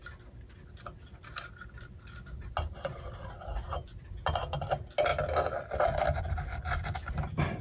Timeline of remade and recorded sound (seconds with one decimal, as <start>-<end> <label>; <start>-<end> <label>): 0.0-7.6 recorded